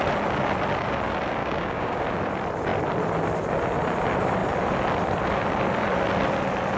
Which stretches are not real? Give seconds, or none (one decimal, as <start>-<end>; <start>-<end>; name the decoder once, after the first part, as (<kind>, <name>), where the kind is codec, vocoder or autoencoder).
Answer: 1.4-2.0 (codec, DAC)